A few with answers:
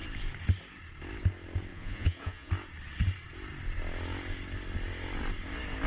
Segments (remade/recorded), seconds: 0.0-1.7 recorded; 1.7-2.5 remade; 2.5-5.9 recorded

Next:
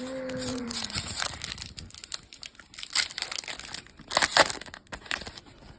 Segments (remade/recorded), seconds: 0.0-0.5 recorded; 0.5-1.4 remade; 1.4-5.8 recorded

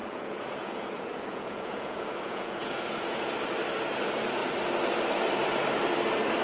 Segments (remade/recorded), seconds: 0.0-3.3 remade; 3.3-6.4 recorded

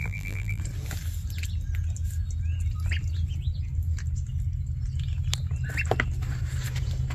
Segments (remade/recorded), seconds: 0.0-0.6 remade; 0.6-7.1 recorded

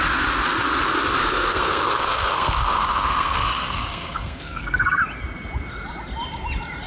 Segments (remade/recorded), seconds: 0.0-1.2 recorded; 1.2-5.0 remade; 5.0-6.9 recorded

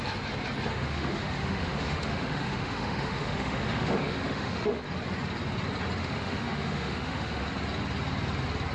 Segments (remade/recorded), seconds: 0.0-0.7 recorded; 0.7-4.8 remade; 4.8-6.0 recorded; 6.0-7.4 remade; 7.4-8.7 recorded